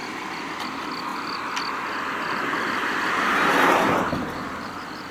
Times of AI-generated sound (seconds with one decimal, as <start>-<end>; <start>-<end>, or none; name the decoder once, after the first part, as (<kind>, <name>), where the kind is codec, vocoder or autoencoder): 0.5-1.1 (vocoder, BigVGAN v2); 4.2-5.1